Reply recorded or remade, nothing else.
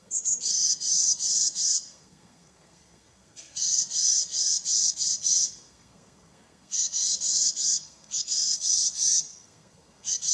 remade